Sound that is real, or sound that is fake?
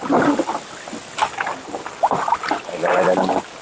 real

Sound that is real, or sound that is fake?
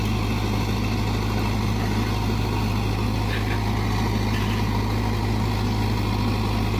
real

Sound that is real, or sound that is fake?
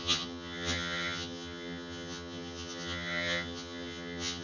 fake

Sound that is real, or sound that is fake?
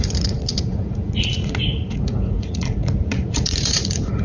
fake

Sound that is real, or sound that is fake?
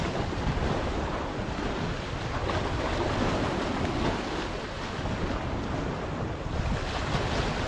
real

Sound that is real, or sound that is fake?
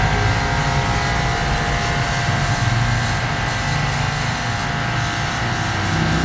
real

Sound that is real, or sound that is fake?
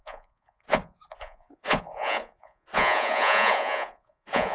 fake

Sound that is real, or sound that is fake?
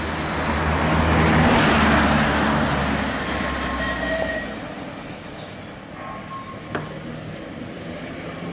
real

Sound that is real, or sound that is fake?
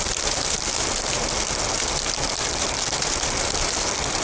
real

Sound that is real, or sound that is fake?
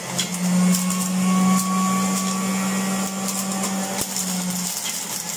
real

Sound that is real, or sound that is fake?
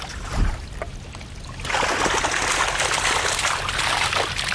real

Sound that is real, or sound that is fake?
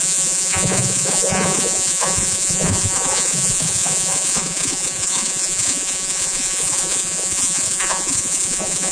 fake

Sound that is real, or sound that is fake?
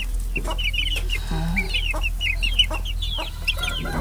real